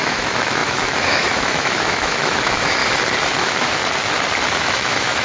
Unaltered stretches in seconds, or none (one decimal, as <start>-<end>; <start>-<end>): 2.8-3.4; 3.8-4.6